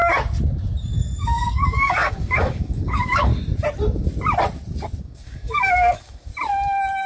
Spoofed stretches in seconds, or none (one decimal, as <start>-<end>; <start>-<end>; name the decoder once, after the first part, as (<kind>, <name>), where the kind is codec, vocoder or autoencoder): 0.9-3.3 (codec, DAC); 5.0-6.3